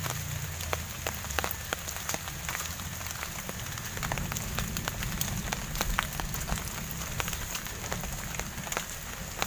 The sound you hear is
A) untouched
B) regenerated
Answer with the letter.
A